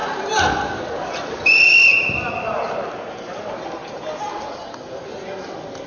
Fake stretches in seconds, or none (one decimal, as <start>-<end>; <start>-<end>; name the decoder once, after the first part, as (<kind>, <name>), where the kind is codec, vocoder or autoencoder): none